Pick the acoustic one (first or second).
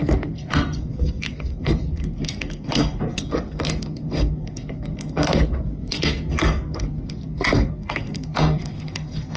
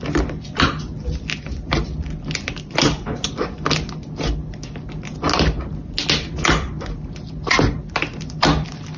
second